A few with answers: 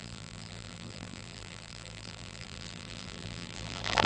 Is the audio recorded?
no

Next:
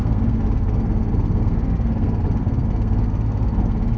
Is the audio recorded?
no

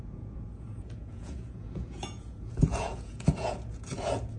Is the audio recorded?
no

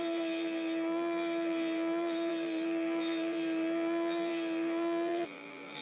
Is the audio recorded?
no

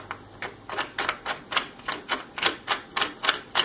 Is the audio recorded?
yes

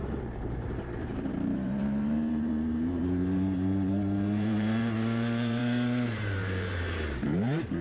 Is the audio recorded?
no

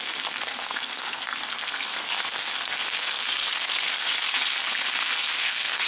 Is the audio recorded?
no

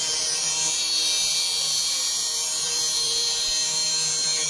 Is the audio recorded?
no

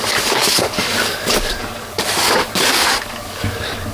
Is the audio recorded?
no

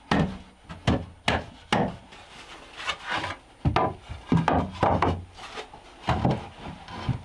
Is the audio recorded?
yes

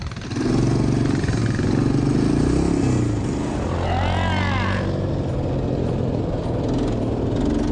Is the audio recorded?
yes